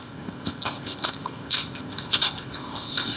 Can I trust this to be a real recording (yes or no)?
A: no